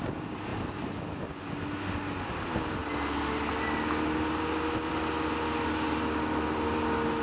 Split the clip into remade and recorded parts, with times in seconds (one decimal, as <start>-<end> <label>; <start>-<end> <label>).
0.0-7.2 recorded